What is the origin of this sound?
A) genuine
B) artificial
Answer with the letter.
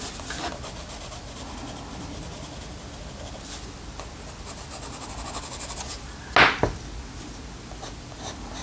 A